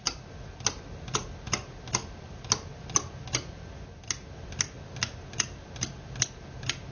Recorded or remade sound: recorded